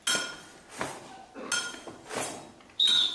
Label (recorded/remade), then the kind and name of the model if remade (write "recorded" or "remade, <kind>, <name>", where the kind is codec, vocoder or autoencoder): recorded